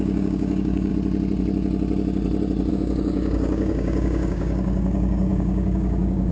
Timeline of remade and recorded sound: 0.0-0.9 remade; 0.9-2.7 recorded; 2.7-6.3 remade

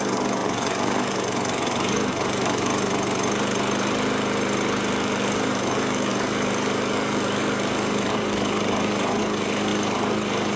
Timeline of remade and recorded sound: 0.0-2.7 remade; 2.7-4.9 recorded; 4.9-10.6 remade

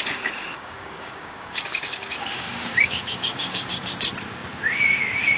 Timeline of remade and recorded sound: 0.0-0.5 recorded; 0.5-3.7 remade; 3.7-5.4 recorded